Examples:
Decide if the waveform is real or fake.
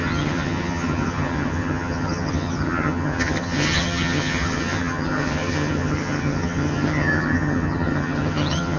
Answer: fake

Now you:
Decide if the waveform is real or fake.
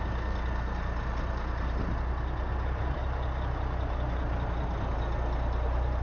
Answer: real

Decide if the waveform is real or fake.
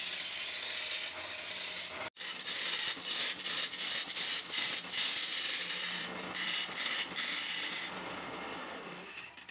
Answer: real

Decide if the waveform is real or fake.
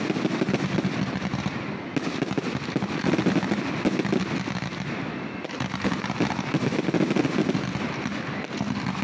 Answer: real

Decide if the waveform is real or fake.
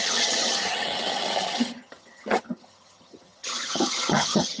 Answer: fake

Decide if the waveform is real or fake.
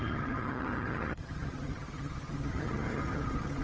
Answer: fake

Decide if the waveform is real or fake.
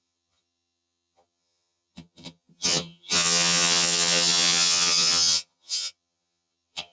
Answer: fake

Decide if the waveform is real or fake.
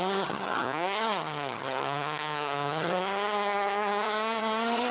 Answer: fake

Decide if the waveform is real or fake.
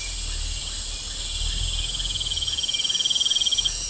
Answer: real